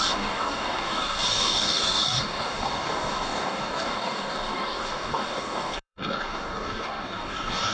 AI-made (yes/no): yes